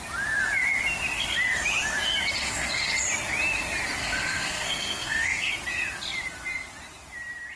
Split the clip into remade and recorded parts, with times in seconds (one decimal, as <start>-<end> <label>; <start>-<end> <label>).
0.0-2.4 recorded; 2.4-2.9 remade; 2.9-4.0 recorded; 4.0-5.5 remade; 5.5-7.6 recorded